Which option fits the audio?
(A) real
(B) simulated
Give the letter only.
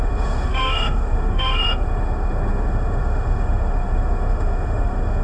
B